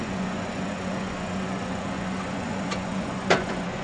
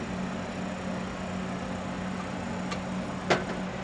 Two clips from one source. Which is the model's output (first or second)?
first